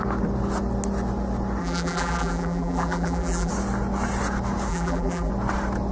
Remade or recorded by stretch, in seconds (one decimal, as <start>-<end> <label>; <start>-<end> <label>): 0.0-1.6 recorded; 1.6-3.5 remade; 3.5-4.7 recorded; 4.7-5.3 remade; 5.3-5.9 recorded